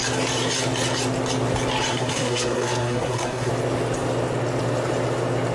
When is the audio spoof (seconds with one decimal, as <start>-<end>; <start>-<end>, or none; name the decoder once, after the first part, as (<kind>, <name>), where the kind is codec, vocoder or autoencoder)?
1.9-3.5 (codec, SNAC)